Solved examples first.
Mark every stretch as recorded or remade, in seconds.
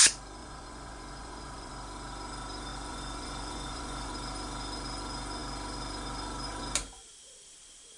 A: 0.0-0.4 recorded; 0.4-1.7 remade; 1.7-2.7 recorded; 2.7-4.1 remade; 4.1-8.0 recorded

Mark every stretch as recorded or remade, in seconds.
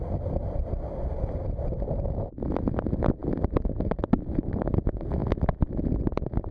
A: 0.0-6.5 recorded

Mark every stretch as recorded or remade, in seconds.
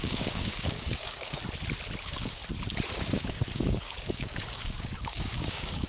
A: 0.0-1.4 remade; 1.4-2.0 recorded; 2.0-2.4 remade; 2.4-2.9 recorded; 2.9-5.9 remade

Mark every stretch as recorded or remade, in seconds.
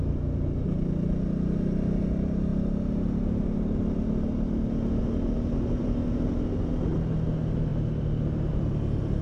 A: 0.0-9.2 recorded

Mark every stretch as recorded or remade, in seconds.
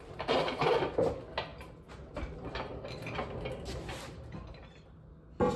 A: 0.0-5.6 recorded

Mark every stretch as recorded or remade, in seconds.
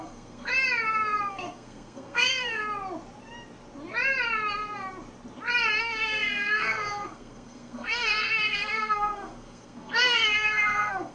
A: 0.0-0.5 remade; 0.5-1.3 recorded; 1.3-2.6 remade; 2.6-5.8 recorded; 5.8-11.1 remade